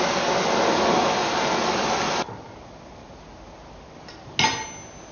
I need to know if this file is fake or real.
real